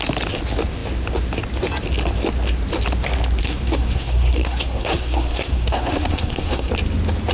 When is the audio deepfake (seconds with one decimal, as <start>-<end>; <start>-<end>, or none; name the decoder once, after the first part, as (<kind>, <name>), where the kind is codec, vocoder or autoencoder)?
3.4-6.7 (codec, SNAC)